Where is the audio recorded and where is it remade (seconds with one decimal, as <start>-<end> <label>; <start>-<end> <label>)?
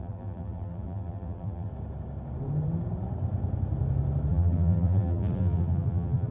0.0-1.7 remade; 1.7-4.3 recorded; 4.3-6.3 remade